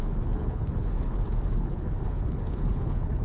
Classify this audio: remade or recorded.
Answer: remade